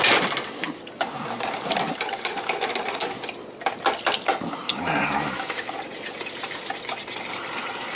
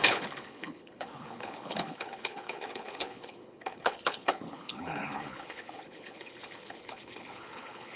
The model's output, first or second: second